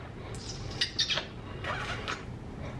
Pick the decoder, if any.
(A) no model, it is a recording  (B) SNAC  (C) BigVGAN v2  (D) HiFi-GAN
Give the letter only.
A